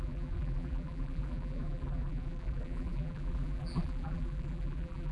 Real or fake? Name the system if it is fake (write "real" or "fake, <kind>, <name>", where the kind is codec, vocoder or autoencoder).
fake, vocoder, BigVGAN v2